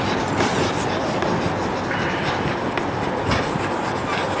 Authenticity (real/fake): real